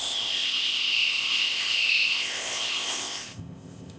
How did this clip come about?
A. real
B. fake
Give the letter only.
B